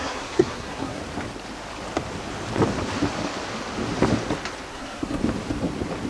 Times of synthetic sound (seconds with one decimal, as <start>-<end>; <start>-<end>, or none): 0.0-1.0; 4.7-5.2